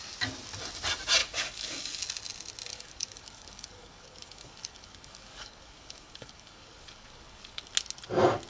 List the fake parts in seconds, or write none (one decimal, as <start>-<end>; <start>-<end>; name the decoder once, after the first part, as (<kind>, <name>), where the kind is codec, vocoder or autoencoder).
1.2-2.0 (codec, DAC); 2.7-7.7